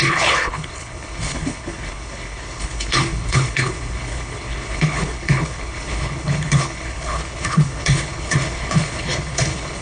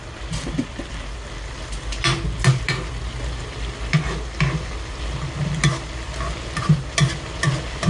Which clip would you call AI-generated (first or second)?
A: first